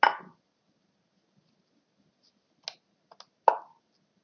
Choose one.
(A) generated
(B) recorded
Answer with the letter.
B